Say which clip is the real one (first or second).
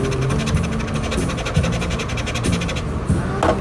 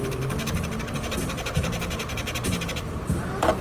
first